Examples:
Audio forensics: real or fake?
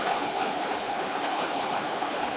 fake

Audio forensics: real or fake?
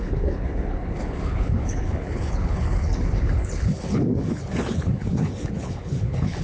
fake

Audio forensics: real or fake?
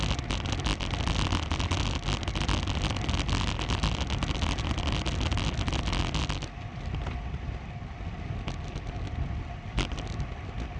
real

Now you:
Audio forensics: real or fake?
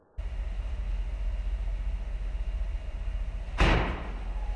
real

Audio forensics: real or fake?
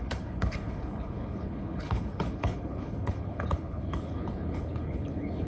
fake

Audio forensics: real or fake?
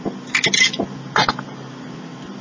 real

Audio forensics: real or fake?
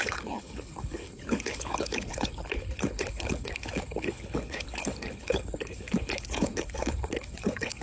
fake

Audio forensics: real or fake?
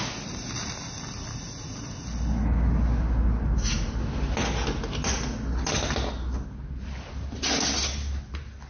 real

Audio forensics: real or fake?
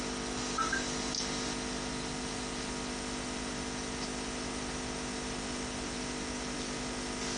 real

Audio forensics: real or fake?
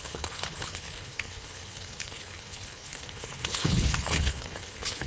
fake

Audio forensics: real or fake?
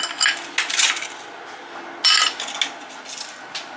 real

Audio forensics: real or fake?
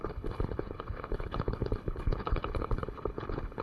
fake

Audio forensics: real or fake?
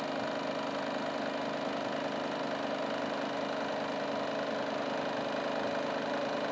real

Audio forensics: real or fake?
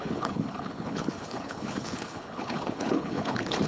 fake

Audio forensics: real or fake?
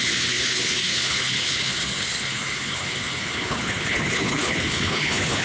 fake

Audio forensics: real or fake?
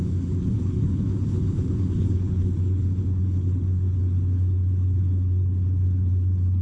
fake